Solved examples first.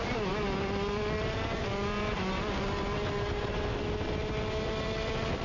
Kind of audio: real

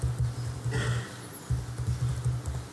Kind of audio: real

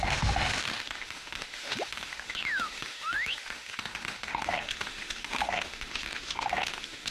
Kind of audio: fake